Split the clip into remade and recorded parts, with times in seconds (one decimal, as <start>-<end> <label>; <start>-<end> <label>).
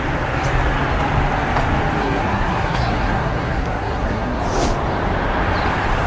0.0-2.0 recorded; 2.0-4.4 remade; 4.4-6.1 recorded